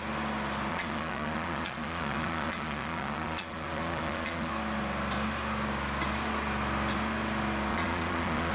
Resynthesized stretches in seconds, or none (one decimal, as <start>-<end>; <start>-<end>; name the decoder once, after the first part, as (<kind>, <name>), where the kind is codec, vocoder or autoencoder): 0.7-4.5 (vocoder, Vocos); 7.7-8.5